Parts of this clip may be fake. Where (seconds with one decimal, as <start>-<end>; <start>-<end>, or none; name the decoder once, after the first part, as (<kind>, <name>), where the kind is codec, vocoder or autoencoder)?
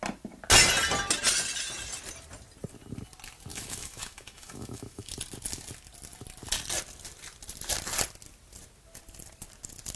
3.5-5.1 (autoencoder, DAC-VAE)